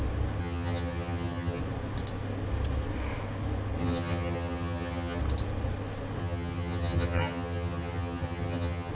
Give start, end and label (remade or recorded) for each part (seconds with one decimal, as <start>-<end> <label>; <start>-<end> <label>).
0.0-0.4 recorded; 0.4-1.6 remade; 1.6-3.8 recorded; 3.8-5.2 remade; 5.2-6.2 recorded; 6.2-8.9 remade